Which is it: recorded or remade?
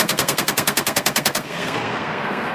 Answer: remade